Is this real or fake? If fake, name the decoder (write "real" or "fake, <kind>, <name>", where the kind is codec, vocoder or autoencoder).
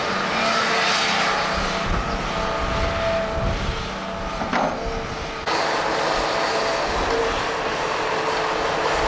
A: real